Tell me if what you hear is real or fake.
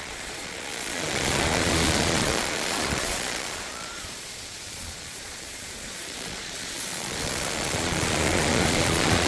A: fake